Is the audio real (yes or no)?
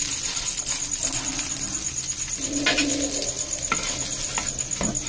yes